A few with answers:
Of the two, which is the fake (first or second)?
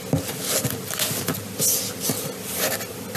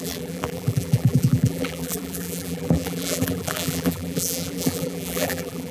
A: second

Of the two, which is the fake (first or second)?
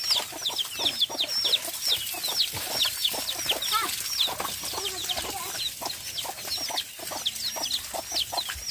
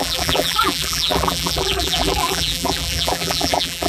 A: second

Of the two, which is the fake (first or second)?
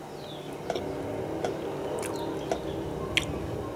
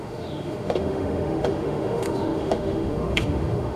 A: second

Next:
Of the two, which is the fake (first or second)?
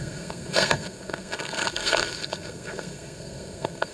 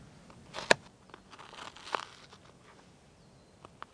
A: first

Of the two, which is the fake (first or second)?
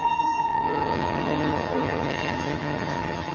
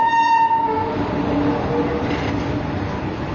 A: first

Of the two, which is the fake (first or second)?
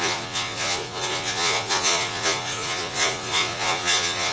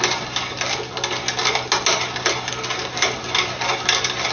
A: first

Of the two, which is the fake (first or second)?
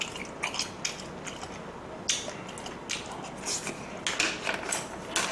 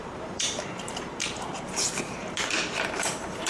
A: second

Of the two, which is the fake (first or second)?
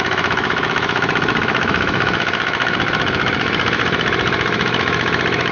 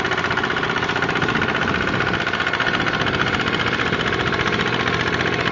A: first